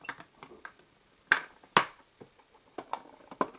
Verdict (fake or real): real